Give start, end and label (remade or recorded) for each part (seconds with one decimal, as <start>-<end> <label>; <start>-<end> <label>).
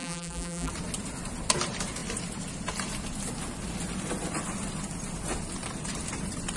0.0-0.7 remade; 0.7-6.6 recorded